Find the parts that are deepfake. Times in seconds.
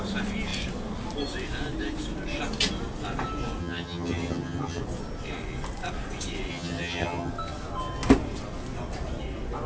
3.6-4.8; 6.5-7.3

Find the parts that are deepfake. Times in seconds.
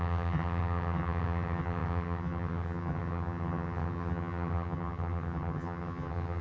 0.0-6.4